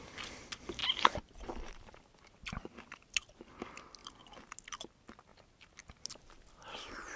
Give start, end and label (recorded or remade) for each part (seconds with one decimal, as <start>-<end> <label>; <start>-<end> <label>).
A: 0.0-7.2 recorded